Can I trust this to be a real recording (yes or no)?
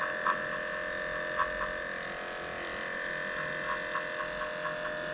yes